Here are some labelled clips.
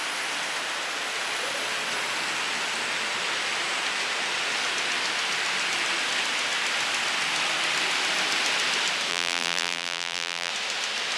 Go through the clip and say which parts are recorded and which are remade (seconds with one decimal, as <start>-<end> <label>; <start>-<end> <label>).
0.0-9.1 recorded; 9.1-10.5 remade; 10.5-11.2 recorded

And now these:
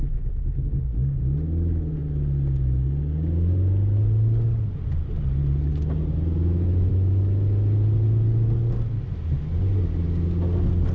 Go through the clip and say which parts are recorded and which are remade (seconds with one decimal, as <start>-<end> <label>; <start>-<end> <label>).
0.0-10.9 recorded

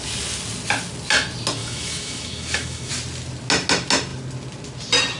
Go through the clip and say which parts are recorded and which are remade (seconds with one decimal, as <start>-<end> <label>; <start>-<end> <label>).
0.0-1.6 recorded; 1.6-2.9 remade; 2.9-5.2 recorded

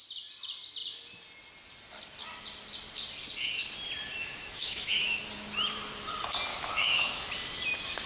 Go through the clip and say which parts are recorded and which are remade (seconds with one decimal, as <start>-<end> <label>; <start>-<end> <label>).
0.0-4.1 recorded; 4.1-5.2 remade; 5.2-6.5 recorded; 6.5-7.3 remade; 7.3-8.1 recorded

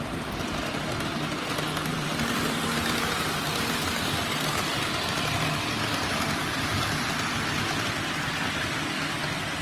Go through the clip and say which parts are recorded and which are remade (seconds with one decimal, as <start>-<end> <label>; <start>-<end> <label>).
0.0-1.9 recorded; 1.9-5.6 remade; 5.6-6.4 recorded; 6.4-7.0 remade; 7.0-9.6 recorded